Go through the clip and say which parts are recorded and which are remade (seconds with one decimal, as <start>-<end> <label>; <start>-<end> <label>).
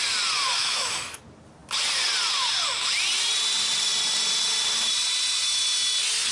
0.0-0.6 recorded; 0.6-1.2 remade; 1.2-6.3 recorded